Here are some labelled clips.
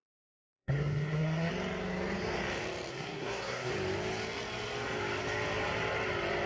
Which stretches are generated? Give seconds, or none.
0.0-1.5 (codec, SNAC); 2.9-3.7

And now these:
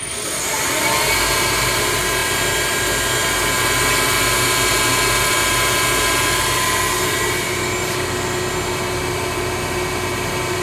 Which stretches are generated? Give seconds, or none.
none

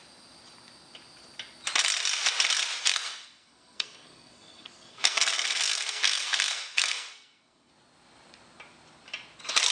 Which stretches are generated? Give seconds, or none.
2.8-7.7 (codec, SNAC)

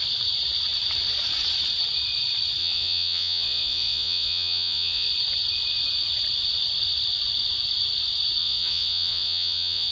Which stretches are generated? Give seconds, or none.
2.6-5.1 (vocoder, Vocos); 8.4-9.9

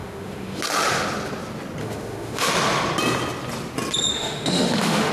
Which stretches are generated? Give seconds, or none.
0.0-0.6 (autoencoder, DAC-VAE); 1.8-2.5; 4.1-5.1

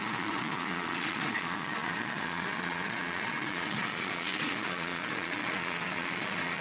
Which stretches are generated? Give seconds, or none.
0.0-6.6 (vocoder, Vocos)

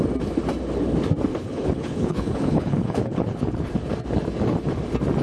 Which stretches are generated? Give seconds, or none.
1.3-3.7 (codec, HILCodec)

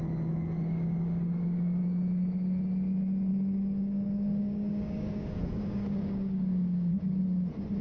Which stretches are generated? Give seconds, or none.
0.6-1.8 (codec, DAC); 3.3-7.2